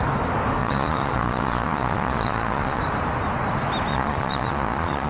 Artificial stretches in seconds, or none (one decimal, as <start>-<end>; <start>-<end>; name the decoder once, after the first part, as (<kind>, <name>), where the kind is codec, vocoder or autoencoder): 0.6-2.8 (vocoder, Vocos); 3.9-5.1